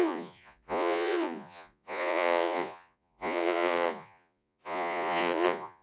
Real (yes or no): no